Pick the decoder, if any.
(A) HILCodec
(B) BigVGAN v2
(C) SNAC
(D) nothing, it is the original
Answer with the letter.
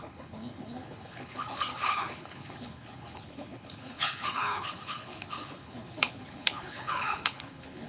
A